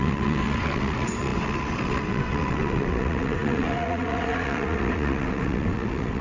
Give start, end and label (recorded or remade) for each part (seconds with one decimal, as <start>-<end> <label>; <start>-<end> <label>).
0.0-6.2 remade